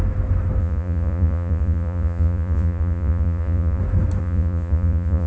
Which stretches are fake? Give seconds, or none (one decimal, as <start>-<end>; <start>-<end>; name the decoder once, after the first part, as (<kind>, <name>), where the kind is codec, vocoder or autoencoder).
0.6-3.8 (vocoder, Vocos); 4.2-5.3